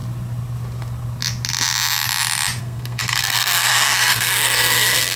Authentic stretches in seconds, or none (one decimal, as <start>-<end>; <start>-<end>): 0.0-2.6